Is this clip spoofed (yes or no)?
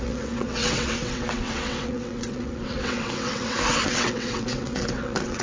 yes